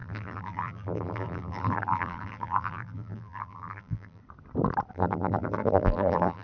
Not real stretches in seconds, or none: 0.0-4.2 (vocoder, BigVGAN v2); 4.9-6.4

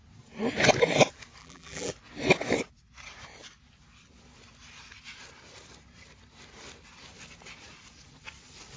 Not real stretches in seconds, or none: 1.4-1.9 (vocoder, BigVGAN v2)